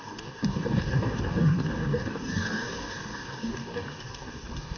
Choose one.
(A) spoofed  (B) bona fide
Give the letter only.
A